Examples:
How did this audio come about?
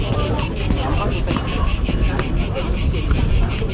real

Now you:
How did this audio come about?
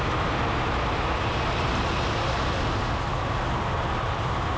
real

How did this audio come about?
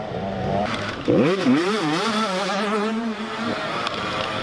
fake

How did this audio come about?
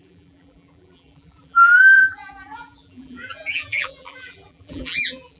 fake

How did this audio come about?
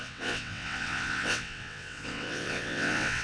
fake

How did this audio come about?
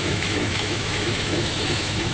fake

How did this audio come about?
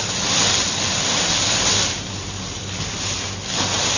real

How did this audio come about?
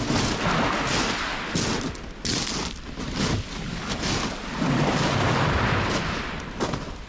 real